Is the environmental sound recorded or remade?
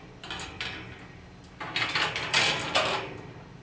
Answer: recorded